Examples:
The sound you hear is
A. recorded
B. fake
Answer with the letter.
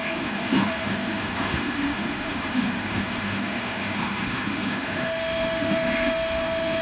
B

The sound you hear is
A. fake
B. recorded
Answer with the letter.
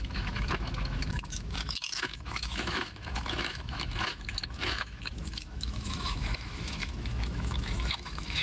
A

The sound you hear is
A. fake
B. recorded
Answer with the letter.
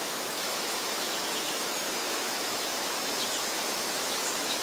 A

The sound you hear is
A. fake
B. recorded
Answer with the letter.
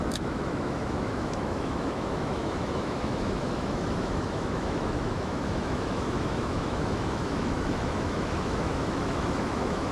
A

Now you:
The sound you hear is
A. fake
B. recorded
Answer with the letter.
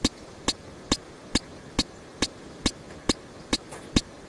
B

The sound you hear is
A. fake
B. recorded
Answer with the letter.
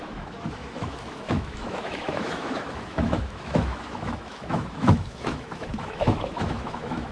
A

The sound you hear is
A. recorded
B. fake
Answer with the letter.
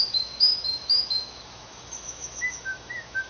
B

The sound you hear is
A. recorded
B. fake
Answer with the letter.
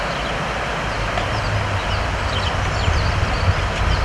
A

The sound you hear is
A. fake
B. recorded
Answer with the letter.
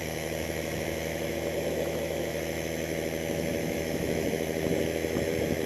A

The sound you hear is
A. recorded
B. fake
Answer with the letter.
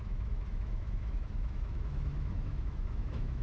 B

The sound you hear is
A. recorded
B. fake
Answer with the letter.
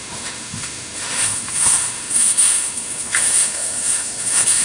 B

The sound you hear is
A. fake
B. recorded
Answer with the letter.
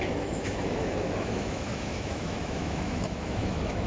A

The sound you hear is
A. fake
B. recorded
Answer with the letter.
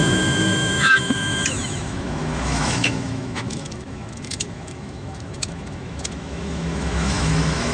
A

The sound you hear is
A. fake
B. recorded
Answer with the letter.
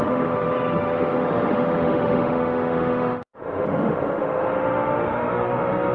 A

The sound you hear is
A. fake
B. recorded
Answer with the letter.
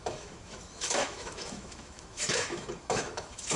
A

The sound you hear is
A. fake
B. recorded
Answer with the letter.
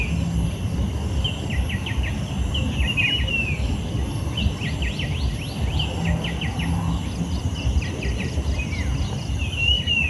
B